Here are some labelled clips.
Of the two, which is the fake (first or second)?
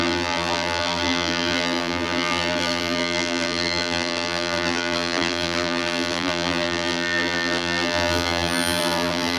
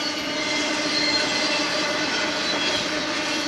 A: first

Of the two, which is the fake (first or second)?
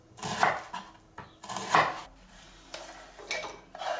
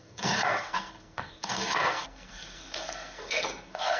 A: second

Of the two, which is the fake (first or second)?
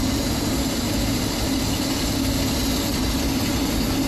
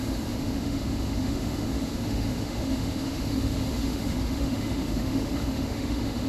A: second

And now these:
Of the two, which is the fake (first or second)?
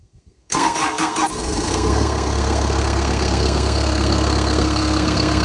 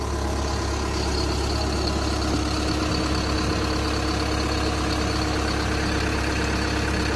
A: first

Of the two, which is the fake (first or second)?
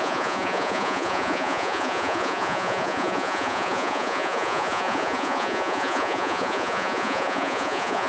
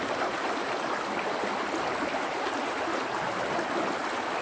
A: first